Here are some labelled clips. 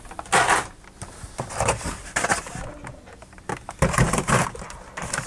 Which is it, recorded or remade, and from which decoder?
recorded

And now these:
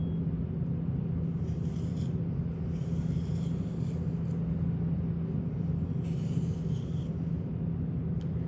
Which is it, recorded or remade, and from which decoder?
recorded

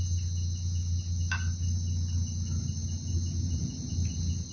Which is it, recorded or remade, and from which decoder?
recorded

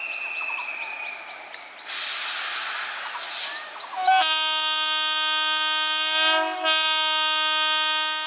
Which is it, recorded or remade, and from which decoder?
recorded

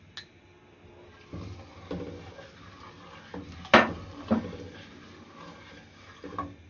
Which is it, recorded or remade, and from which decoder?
recorded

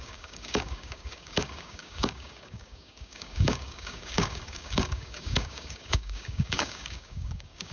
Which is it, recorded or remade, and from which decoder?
remade, codec, DAC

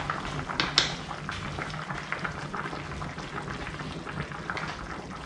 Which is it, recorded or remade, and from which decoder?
recorded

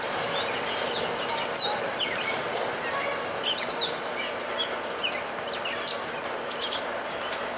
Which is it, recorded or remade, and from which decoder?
recorded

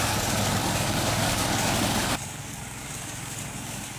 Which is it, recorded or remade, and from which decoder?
remade, codec, DAC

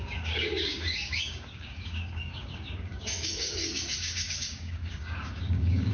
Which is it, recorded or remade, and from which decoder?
remade, codec, DAC